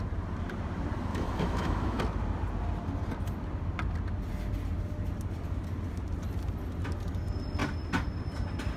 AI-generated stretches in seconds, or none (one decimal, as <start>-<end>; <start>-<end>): 1.1-2.0